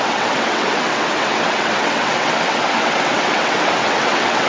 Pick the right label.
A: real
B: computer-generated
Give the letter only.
B